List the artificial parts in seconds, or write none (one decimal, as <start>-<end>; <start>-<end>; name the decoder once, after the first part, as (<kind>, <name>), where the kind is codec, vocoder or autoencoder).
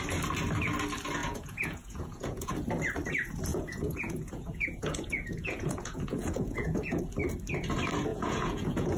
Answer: 1.2-2.5 (vocoder, Vocos); 3.5-7.0; 8.1-9.0